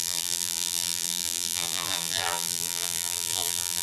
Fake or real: fake